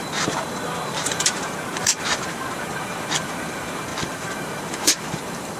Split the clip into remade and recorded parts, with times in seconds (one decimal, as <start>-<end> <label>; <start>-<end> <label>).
0.0-5.6 remade